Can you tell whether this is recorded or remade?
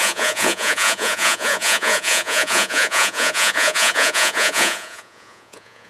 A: remade